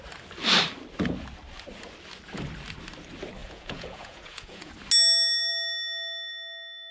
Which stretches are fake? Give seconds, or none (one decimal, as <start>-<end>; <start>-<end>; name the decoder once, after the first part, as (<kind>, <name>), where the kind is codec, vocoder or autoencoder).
3.4-4.7 (vocoder, Vocos)